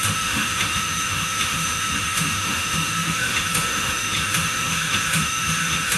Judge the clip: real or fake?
fake